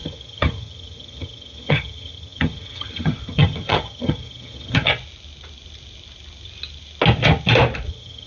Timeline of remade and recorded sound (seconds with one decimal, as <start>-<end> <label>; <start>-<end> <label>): 0.0-4.9 remade; 4.9-7.9 recorded; 7.9-8.3 remade